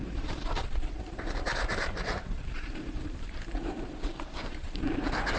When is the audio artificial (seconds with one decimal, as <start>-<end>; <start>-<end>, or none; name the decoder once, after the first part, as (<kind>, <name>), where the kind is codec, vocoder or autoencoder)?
0.0-5.4 (vocoder, BigVGAN v2)